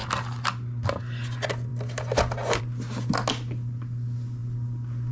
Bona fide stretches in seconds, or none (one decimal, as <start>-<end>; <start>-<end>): 0.0-5.1